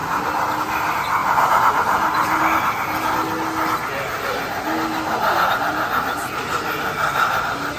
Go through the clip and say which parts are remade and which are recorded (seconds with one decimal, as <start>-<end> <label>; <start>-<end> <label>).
0.0-1.2 recorded; 1.2-2.4 remade; 2.4-7.8 recorded